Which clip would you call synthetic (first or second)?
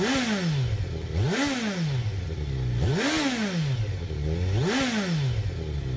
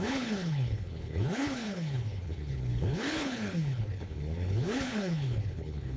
second